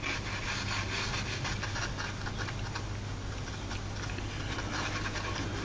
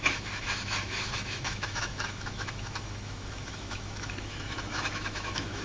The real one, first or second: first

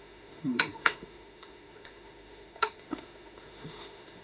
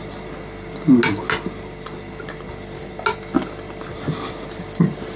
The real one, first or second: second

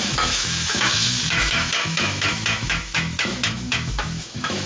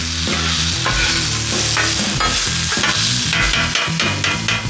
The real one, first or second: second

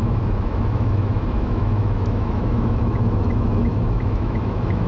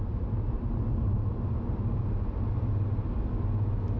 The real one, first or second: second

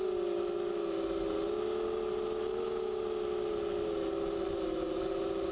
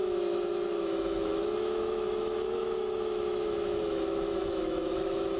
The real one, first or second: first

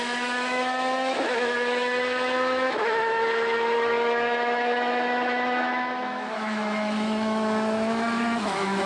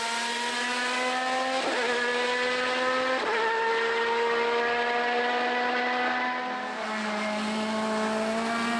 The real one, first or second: second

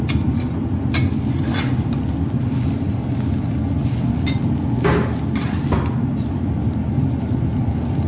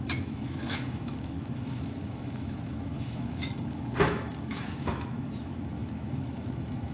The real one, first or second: first